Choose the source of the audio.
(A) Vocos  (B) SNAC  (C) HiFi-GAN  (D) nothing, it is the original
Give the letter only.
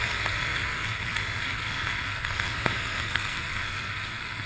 B